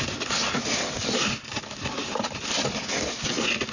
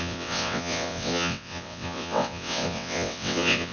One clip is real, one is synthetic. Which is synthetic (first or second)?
second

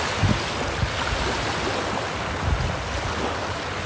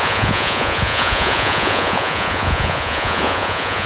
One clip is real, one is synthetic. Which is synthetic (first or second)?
second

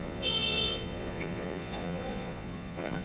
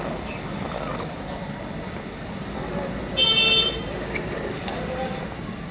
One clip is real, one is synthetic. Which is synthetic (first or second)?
first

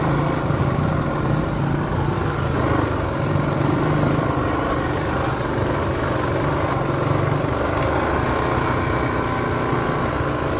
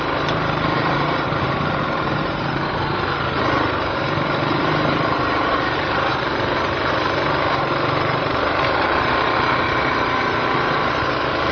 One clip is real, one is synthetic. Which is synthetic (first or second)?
second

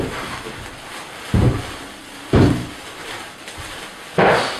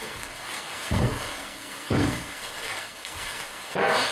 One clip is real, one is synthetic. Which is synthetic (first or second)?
second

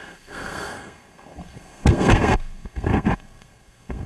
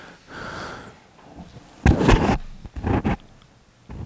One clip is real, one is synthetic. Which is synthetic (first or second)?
first